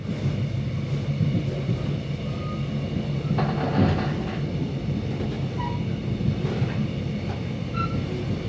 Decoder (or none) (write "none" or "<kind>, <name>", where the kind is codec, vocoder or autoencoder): none